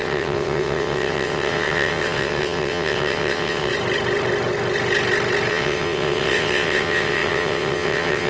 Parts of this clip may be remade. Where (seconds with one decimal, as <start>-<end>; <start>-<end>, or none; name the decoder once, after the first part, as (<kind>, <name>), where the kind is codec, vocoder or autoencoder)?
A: 0.0-3.7 (vocoder, WaveNeXt); 5.5-8.3

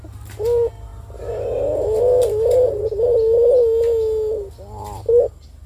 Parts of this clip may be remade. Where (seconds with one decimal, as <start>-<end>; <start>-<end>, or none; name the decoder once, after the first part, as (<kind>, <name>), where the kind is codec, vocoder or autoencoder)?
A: none